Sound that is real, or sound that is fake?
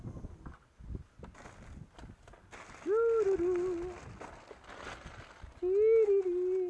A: real